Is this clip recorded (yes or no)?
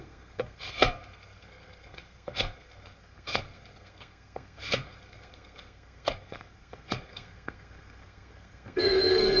no